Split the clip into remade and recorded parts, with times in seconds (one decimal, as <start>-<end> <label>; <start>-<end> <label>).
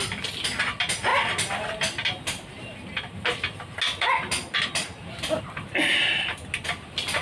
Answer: 0.0-7.2 recorded